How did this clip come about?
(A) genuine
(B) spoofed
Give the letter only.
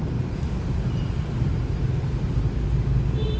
A